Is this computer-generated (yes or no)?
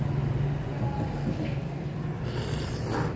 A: no